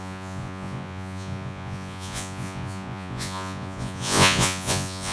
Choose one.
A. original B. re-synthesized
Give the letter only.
B